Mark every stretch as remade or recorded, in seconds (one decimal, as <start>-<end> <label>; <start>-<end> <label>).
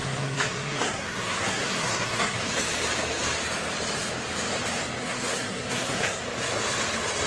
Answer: 0.0-2.5 remade; 2.5-5.0 recorded; 5.0-6.2 remade; 6.2-7.3 recorded